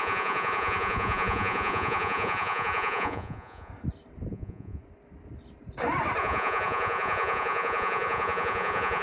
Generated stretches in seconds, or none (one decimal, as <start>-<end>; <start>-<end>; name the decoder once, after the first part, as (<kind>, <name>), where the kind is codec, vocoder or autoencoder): 0.0-3.7 (vocoder, Vocos); 4.3-4.8; 6.2-9.0